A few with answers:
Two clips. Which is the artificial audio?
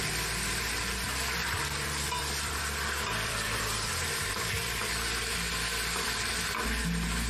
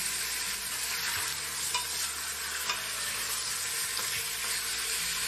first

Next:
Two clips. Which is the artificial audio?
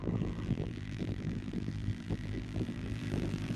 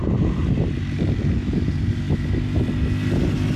first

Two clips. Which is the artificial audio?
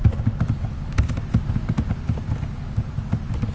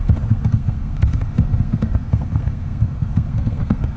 second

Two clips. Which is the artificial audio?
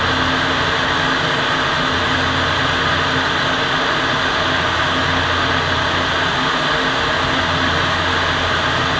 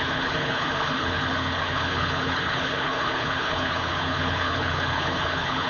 second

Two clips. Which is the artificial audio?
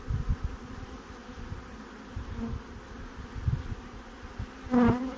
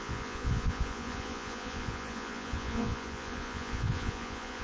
second